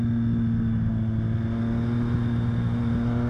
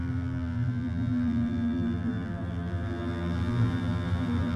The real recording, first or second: first